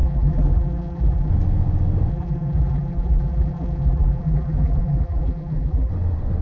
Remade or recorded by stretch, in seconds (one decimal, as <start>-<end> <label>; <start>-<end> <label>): 0.0-1.3 remade; 1.3-2.1 recorded; 2.1-5.9 remade; 5.9-6.4 recorded